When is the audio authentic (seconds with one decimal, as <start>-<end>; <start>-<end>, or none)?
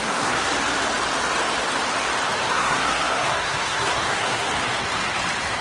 0.5-2.5; 4.5-5.6